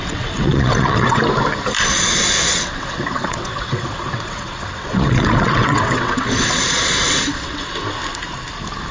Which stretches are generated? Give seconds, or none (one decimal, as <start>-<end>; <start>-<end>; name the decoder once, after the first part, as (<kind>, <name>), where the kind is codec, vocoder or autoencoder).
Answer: 0.0-1.2 (vocoder, WaveNeXt); 2.5-7.7